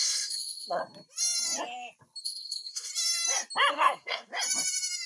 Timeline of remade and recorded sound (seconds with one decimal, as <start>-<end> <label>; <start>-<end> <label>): 0.0-0.8 remade; 0.8-2.2 recorded; 2.2-2.9 remade; 2.9-3.7 recorded; 3.7-4.3 remade; 4.3-5.1 recorded